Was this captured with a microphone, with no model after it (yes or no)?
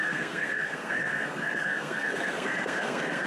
no